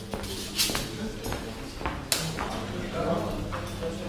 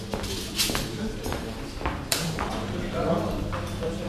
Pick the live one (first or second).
first